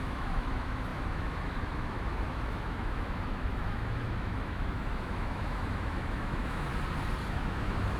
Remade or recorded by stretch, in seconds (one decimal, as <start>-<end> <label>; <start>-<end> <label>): 0.0-6.7 remade; 6.7-7.3 recorded; 7.3-8.0 remade